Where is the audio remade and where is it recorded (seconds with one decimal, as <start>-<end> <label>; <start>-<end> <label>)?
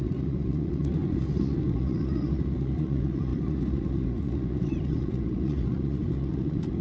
0.0-6.8 remade